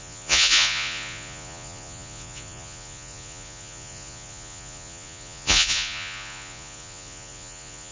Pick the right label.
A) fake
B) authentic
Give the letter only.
A